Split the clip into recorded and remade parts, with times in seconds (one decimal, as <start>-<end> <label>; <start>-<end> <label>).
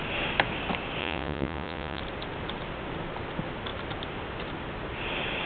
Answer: 0.0-1.0 recorded; 1.0-2.0 remade; 2.0-5.5 recorded